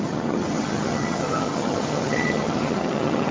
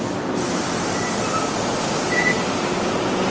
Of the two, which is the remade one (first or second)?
first